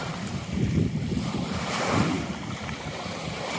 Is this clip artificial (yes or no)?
no